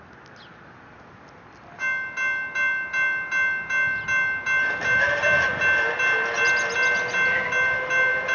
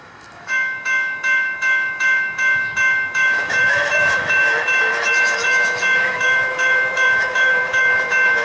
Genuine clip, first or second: first